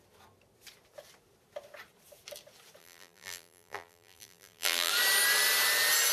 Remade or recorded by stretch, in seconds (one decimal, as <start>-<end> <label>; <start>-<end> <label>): 0.0-2.8 recorded; 2.8-4.9 remade; 4.9-6.1 recorded